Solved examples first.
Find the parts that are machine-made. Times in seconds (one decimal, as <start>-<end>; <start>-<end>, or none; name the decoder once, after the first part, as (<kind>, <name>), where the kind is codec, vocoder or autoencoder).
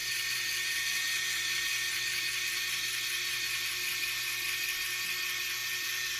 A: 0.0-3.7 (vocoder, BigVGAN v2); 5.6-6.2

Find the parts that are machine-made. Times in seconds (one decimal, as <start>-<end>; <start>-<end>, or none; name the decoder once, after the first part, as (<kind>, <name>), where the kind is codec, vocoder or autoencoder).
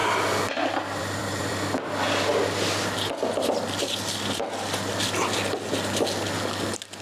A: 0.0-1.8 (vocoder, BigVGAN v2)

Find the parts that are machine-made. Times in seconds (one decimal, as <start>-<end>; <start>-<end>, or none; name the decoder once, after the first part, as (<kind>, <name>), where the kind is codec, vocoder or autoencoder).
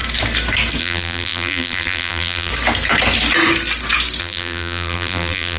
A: 0.8-2.5 (vocoder, BigVGAN v2); 4.2-5.6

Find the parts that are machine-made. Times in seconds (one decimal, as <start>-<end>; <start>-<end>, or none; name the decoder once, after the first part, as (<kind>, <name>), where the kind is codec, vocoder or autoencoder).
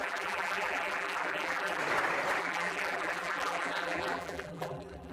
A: 0.0-1.8 (vocoder, BigVGAN v2); 2.4-5.1